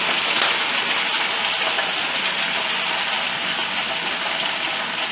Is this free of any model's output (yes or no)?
yes